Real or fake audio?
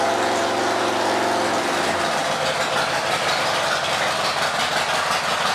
real